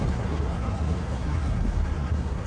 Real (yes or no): no